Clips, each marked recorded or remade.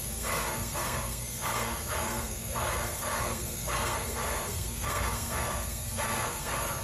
remade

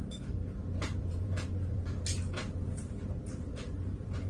remade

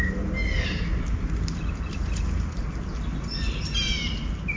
recorded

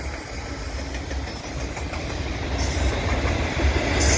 recorded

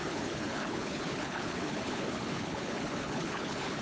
remade